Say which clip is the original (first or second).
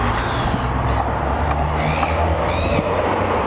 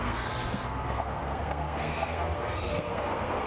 first